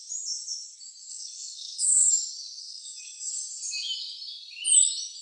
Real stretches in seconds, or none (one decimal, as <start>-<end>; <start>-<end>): 0.0-1.1; 2.1-2.6; 3.3-5.2